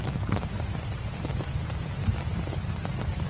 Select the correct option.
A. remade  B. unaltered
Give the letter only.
B